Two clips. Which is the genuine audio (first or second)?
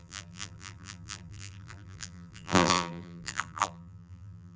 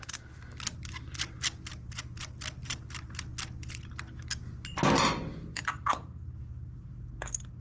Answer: second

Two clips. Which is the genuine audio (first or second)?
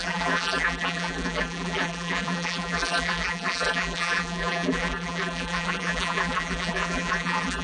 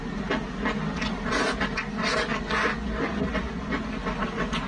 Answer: second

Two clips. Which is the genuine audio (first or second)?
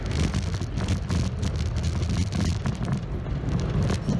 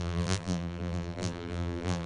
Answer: first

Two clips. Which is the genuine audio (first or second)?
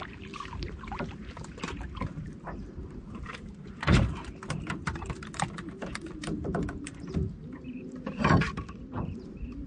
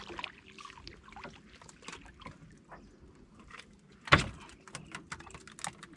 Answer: second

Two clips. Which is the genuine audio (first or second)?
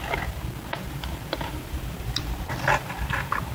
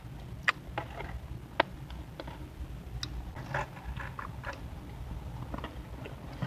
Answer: second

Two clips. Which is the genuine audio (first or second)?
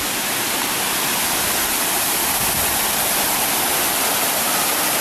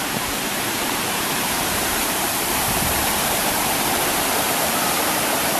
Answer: first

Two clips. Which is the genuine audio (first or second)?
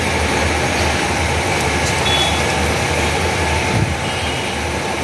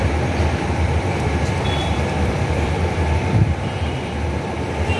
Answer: first